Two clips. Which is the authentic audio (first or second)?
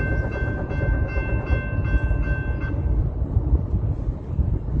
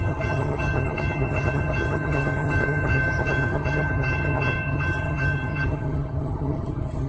first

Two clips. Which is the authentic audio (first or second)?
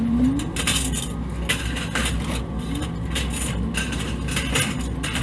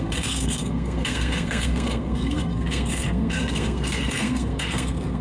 first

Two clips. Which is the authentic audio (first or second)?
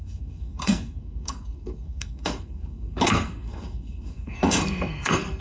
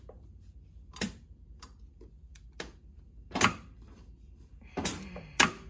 second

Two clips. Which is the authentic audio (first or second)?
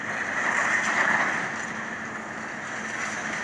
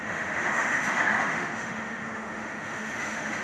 first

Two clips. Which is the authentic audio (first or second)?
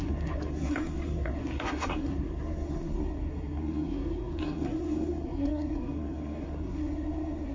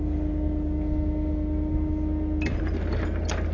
second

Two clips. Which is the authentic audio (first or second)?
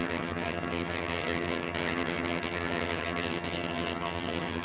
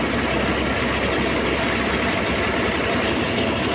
second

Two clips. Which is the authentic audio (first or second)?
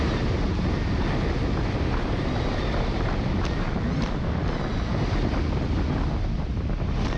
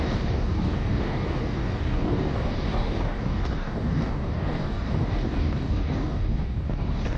first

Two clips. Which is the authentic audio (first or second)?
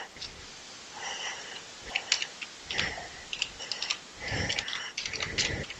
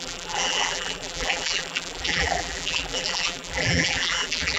first